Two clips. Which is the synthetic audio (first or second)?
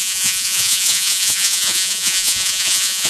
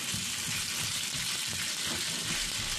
first